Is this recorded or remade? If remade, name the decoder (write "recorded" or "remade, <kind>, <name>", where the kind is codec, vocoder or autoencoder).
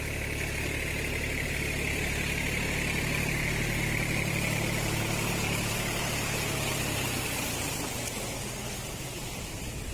recorded